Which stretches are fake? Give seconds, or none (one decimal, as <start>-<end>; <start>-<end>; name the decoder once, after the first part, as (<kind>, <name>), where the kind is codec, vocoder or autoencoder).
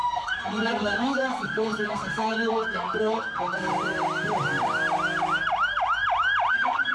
0.0-3.7 (codec, SNAC); 6.5-6.9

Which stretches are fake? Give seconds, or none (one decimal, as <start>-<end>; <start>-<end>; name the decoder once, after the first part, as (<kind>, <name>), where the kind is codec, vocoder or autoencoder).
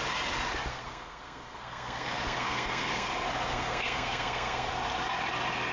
0.7-3.1 (codec, SNAC); 3.5-4.7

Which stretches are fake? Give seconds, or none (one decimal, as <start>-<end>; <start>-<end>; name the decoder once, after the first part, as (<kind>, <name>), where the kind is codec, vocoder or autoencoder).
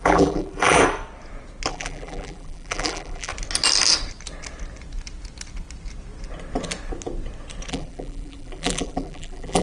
0.0-0.8 (vocoder, BigVGAN v2); 1.7-3.3; 7.7-9.6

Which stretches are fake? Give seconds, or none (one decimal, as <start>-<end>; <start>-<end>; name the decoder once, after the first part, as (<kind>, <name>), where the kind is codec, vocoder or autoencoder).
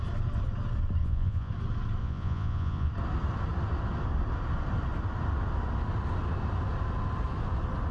1.0-1.5 (vocoder, Vocos); 2.0-2.9